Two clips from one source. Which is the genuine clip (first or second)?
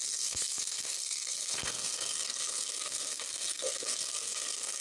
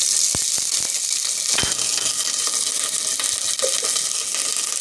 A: second